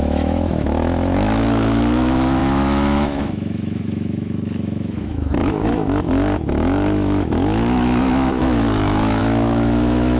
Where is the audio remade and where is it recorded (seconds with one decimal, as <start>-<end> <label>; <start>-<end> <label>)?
0.0-10.2 remade